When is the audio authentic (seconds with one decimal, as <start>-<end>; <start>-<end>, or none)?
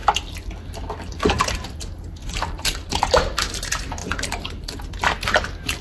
0.0-2.2; 3.0-4.0; 5.0-5.8